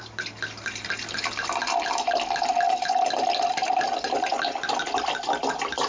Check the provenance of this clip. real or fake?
real